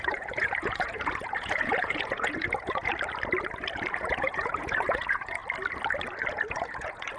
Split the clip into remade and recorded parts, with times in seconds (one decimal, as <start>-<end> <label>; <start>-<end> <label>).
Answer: 0.0-2.9 remade; 2.9-3.9 recorded; 3.9-5.4 remade; 5.4-6.3 recorded; 6.3-7.2 remade